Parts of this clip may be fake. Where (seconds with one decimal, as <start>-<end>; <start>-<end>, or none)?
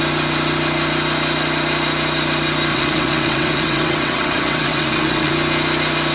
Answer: 2.7-5.3